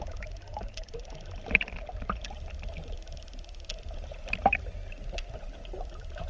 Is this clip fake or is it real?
real